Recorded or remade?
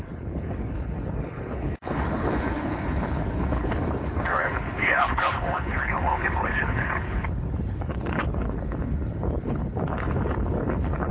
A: remade